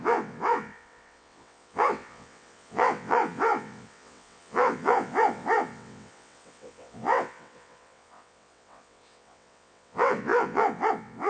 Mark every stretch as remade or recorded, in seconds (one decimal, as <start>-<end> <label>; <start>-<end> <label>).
0.0-11.3 remade